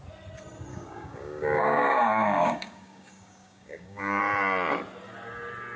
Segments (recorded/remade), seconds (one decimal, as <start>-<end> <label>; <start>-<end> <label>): 0.0-0.7 recorded; 0.7-4.2 remade; 4.2-5.8 recorded